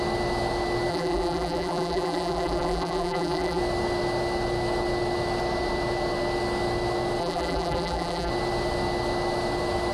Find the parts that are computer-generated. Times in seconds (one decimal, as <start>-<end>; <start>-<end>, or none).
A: 0.9-3.6; 7.2-8.3